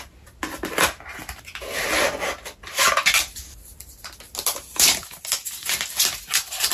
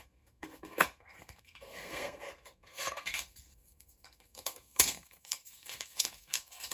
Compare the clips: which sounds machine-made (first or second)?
second